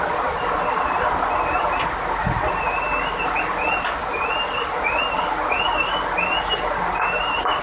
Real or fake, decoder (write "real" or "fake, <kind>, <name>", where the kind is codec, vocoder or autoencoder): real